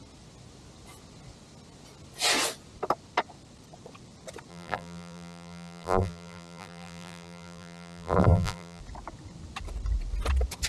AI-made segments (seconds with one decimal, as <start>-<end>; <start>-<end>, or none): 4.5-8.8